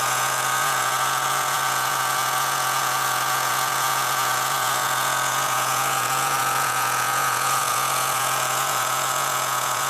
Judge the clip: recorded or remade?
remade